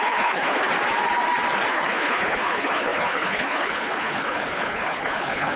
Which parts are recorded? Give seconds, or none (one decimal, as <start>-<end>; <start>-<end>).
0.7-1.7